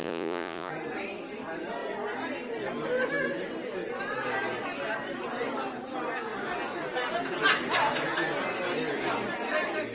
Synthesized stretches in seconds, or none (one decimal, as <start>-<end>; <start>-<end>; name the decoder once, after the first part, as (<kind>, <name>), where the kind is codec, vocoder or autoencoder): 0.0-0.7 (vocoder, Vocos)